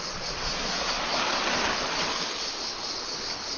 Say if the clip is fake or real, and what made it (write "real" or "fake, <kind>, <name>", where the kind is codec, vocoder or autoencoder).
real